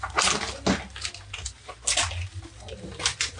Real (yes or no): yes